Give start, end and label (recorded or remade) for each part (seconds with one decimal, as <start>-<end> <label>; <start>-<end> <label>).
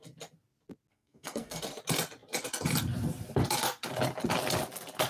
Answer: 0.0-0.9 recorded; 0.9-1.6 remade; 1.6-5.1 recorded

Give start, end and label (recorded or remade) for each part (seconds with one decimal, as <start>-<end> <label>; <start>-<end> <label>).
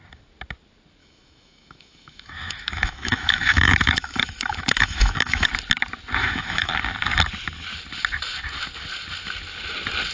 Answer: 0.0-1.0 recorded; 1.0-5.5 remade; 5.5-6.2 recorded; 6.2-6.7 remade; 6.7-10.1 recorded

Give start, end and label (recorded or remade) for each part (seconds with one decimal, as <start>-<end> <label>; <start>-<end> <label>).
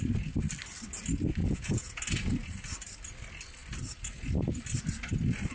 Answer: 0.0-1.4 recorded; 1.4-2.0 remade; 2.0-5.5 recorded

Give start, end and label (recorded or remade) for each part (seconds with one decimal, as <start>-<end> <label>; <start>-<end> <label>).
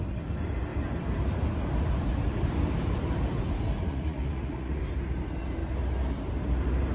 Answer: 0.0-3.8 recorded; 3.8-4.8 remade; 4.8-6.9 recorded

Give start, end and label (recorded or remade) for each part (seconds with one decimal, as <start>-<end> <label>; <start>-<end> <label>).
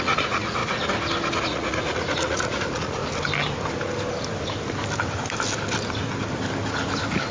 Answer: 0.0-0.6 remade; 0.6-1.4 recorded; 1.4-3.0 remade; 3.0-7.3 recorded